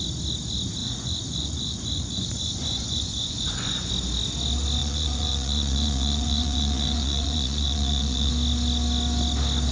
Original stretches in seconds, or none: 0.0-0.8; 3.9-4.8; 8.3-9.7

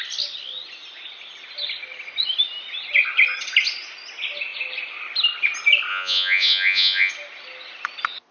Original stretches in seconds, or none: 0.0-5.9; 7.1-8.3

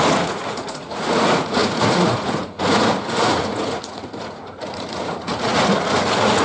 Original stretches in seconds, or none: none

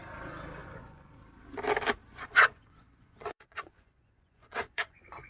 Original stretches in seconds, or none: 0.0-0.6; 1.1-2.0

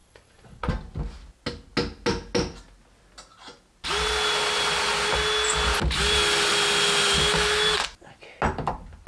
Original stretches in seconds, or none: 0.7-9.1